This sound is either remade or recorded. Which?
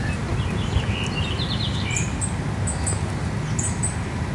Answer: recorded